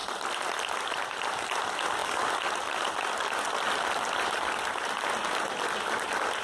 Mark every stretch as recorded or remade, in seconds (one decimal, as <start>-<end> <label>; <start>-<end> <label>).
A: 0.0-1.2 remade; 1.2-6.4 recorded